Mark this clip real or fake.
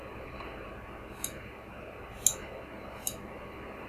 real